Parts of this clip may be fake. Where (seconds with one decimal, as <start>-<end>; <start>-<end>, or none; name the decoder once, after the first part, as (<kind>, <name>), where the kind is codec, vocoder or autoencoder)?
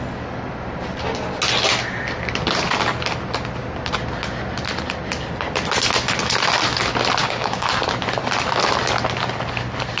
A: 7.2-7.7 (codec, DAC)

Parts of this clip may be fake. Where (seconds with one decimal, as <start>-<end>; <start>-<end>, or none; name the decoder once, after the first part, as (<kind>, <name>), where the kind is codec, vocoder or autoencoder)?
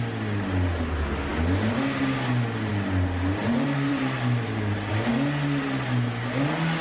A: 3.4-4.9 (vocoder, BigVGAN v2)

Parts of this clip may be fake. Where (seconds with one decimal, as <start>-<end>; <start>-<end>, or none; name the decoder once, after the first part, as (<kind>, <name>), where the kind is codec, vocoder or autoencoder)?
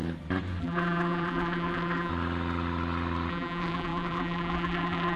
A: 0.6-2.1 (vocoder, BigVGAN v2); 3.3-5.2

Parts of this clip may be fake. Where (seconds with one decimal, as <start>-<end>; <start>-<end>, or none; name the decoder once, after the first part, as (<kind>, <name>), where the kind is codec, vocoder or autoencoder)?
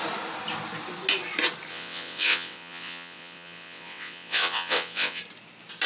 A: 1.7-5.2 (vocoder, WaveNeXt)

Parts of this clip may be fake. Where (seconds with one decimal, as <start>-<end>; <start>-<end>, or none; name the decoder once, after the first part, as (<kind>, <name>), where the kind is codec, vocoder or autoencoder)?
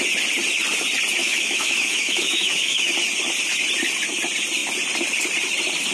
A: 1.2-2.9 (autoencoder, DAC-VAE)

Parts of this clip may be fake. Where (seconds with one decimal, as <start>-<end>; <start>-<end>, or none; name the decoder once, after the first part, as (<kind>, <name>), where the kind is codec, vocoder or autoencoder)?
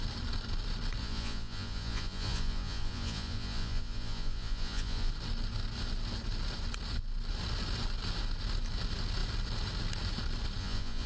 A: 1.0-5.1 (vocoder, Vocos); 10.6-11.1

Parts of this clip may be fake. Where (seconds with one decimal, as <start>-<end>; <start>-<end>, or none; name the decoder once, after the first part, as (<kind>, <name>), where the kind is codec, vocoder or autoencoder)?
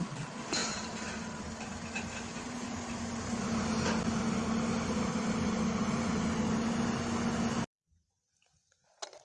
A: none